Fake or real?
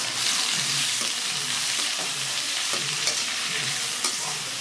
fake